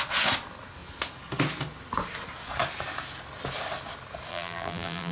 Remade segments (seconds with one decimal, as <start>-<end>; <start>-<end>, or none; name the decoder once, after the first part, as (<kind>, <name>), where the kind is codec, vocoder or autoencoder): 4.3-5.1 (vocoder, BigVGAN v2)